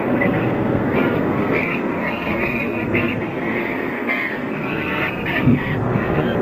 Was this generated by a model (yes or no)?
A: yes